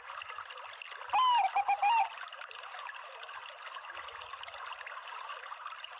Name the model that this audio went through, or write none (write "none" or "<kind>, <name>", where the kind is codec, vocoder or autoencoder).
none